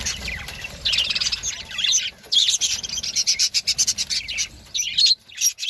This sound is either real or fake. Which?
real